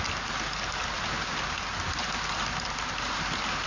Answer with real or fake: real